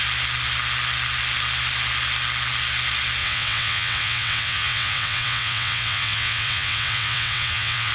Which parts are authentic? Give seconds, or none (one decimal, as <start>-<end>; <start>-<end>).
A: 0.0-3.2